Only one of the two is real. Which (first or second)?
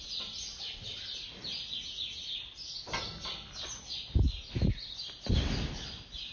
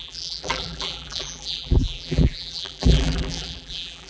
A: first